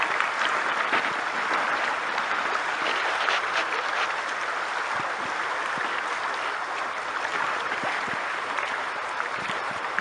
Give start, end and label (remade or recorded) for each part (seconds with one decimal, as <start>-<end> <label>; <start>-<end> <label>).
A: 0.0-7.3 recorded; 7.3-10.0 remade